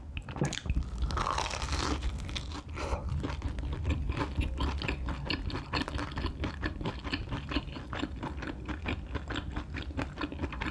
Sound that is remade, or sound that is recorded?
recorded